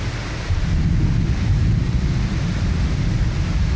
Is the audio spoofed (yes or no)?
no